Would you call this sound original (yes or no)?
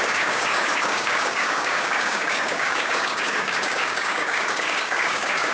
no